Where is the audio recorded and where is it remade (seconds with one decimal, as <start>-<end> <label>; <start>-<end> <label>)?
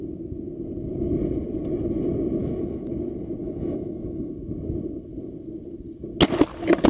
0.0-2.4 recorded; 2.4-2.9 remade; 2.9-3.4 recorded; 3.4-4.3 remade; 4.3-6.9 recorded